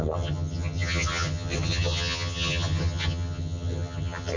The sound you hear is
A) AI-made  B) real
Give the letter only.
A